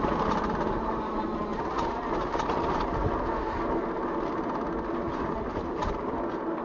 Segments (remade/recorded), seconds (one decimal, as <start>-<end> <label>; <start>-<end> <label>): 0.0-6.6 recorded